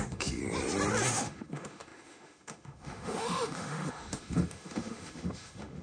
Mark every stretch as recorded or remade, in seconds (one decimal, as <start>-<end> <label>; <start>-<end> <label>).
0.0-0.4 remade; 0.4-1.1 recorded; 1.1-5.8 remade